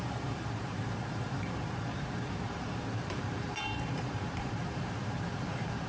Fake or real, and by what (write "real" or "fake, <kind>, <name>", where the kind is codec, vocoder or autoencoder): fake, vocoder, BigVGAN v2